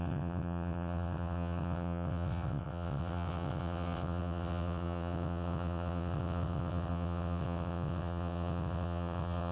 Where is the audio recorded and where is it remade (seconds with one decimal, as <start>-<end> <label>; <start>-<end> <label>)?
0.0-9.5 remade